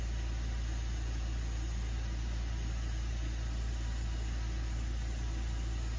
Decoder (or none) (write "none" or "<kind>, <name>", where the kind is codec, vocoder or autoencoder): none